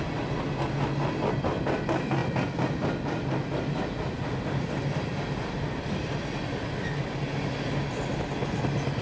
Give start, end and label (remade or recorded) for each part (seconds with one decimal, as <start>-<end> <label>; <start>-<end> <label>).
0.0-9.0 recorded